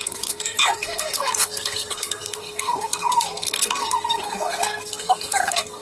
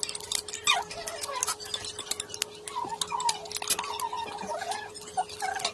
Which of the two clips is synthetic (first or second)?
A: first